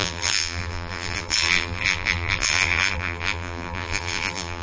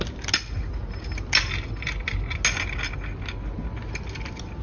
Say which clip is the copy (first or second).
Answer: first